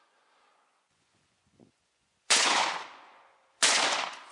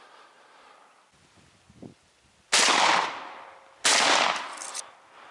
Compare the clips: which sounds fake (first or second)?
first